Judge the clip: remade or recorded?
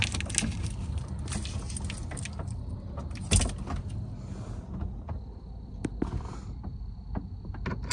recorded